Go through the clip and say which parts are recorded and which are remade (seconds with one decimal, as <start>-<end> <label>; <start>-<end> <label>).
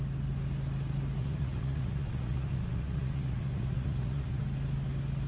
0.0-1.2 recorded; 1.2-4.4 remade; 4.4-5.3 recorded